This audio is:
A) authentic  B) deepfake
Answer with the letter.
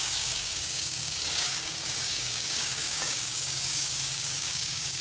B